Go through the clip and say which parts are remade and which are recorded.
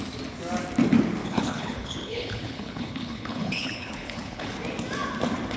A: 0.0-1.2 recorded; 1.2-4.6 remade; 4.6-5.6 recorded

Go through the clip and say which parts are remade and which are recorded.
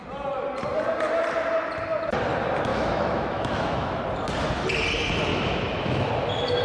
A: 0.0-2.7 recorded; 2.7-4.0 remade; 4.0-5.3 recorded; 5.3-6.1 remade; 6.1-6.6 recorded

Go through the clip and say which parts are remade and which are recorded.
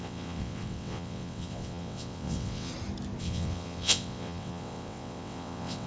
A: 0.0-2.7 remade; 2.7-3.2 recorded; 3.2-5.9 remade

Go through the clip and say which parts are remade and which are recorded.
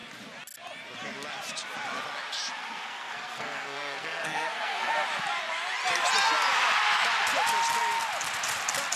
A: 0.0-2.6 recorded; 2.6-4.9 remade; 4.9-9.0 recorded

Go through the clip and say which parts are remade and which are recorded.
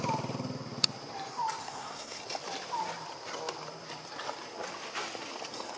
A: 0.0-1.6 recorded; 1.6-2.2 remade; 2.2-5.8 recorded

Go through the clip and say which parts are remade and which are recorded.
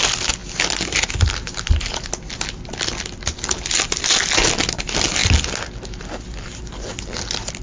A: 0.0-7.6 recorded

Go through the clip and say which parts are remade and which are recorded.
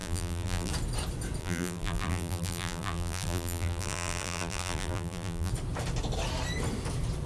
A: 0.0-0.7 remade; 0.7-1.4 recorded; 1.4-5.5 remade; 5.5-7.3 recorded